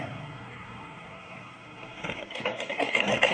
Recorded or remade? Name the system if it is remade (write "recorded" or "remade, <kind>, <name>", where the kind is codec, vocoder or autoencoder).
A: remade, codec, SNAC